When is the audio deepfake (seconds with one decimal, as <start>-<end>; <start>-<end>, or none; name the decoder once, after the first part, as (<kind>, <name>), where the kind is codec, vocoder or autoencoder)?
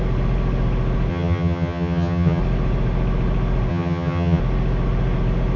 1.1-2.4 (vocoder, HiFi-GAN); 3.7-4.4